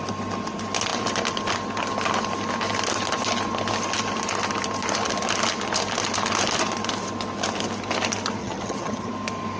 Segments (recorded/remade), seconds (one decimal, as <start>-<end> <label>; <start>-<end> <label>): 0.0-8.4 recorded; 8.4-9.1 remade; 9.1-9.6 recorded